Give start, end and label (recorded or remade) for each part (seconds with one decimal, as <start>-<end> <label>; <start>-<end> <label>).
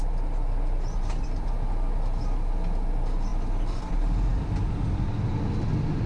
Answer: 0.0-4.3 recorded; 4.3-5.3 remade; 5.3-6.1 recorded